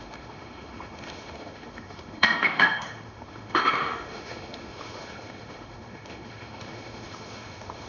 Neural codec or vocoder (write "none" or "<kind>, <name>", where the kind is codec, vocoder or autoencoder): autoencoder, DAC-VAE